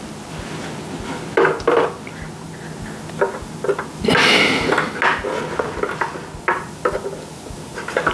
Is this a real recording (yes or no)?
yes